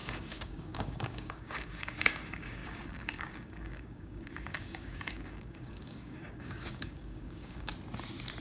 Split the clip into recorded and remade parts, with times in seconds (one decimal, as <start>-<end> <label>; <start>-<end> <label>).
0.0-7.7 remade; 7.7-8.4 recorded